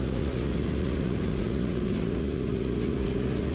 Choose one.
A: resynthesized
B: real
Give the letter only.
A